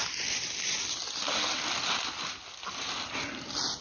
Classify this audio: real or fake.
real